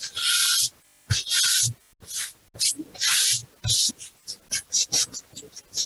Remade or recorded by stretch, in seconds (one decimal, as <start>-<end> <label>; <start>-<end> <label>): 0.0-5.9 recorded